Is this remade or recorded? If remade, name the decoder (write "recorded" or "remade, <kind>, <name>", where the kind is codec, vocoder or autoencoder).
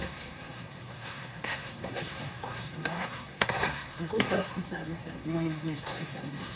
remade, codec, SNAC